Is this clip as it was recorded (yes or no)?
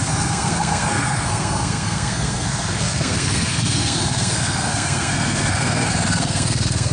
no